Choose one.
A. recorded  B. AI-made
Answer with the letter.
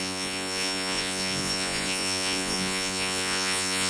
B